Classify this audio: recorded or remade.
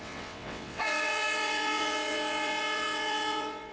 remade